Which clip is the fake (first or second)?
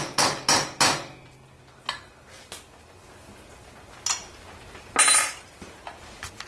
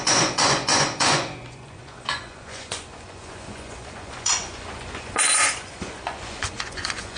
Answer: second